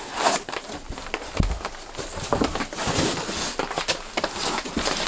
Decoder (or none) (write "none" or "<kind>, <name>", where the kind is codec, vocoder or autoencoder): none